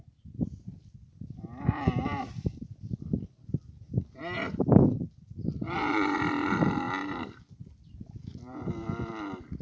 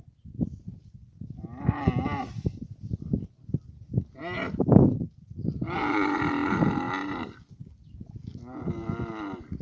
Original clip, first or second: second